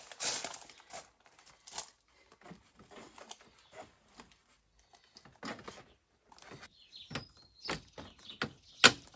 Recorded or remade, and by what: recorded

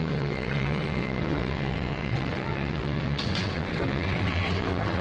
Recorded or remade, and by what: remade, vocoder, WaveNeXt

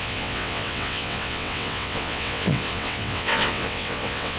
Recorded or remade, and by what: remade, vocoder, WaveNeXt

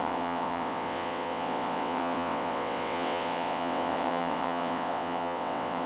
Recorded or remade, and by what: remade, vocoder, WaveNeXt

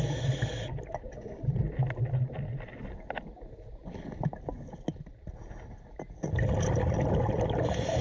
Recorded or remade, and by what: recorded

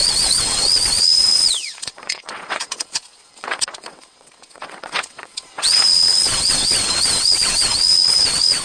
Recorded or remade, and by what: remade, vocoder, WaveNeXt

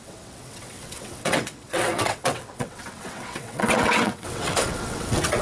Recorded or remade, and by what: remade, vocoder, WaveNeXt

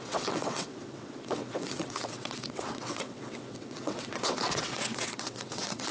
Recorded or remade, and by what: remade, vocoder, WaveNeXt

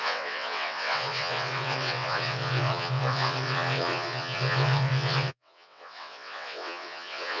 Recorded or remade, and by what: remade, vocoder, WaveNeXt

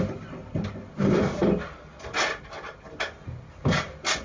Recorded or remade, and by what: recorded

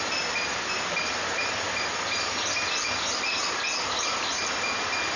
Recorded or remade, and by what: recorded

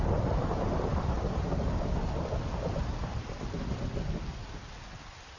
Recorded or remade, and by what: recorded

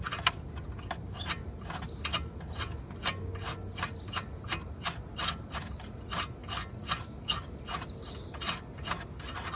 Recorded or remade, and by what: recorded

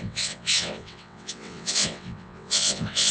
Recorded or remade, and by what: remade, vocoder, WaveNeXt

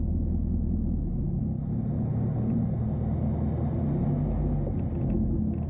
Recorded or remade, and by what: recorded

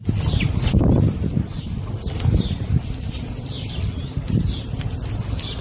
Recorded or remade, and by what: recorded